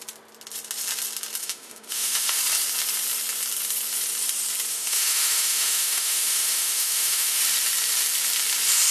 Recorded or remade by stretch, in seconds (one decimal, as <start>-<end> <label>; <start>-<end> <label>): 0.0-1.4 recorded; 1.4-2.4 remade; 2.4-4.7 recorded; 4.7-7.4 remade; 7.4-8.9 recorded